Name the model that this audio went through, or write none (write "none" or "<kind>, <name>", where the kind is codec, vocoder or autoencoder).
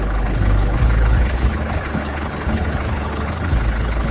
codec, HILCodec